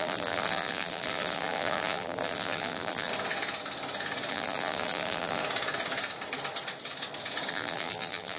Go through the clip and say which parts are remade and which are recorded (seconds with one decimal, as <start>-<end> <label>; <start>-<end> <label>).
0.0-3.1 remade; 3.1-4.3 recorded; 4.3-5.4 remade; 5.4-7.5 recorded; 7.5-8.4 remade